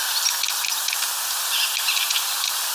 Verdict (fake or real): real